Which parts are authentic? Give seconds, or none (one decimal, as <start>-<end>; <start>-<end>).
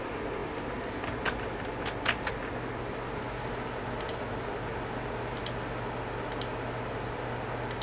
0.0-7.8